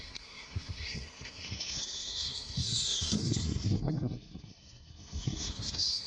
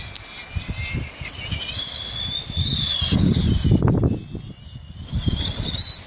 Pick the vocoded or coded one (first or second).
first